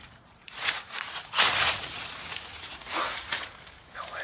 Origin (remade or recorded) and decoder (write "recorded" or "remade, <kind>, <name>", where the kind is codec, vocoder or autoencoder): remade, vocoder, Vocos